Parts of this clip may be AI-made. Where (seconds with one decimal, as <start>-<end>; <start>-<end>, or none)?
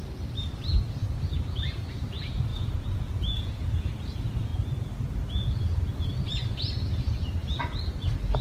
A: 2.5-3.8